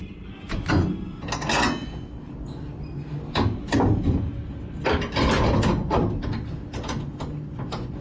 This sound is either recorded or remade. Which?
recorded